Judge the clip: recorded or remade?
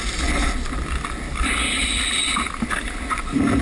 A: recorded